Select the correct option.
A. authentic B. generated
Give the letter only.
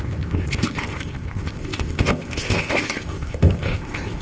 B